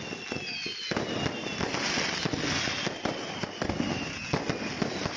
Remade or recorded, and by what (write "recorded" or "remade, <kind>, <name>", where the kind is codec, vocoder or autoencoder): recorded